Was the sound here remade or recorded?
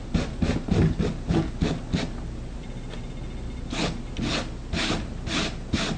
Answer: recorded